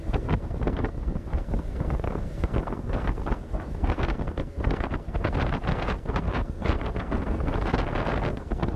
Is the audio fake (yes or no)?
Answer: yes